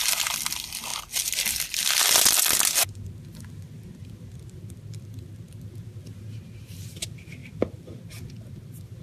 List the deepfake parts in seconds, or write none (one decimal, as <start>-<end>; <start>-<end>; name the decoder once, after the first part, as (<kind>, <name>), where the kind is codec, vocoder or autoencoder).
none